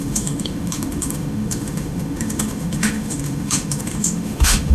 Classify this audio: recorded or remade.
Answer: remade